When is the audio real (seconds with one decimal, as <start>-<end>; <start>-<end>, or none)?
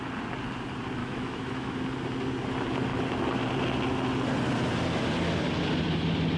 0.0-1.0; 1.8-6.4